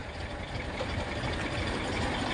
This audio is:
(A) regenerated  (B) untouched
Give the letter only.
B